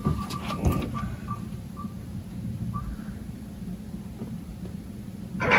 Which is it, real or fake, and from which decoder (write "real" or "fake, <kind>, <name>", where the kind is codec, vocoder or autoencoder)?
fake, vocoder, BigVGAN v2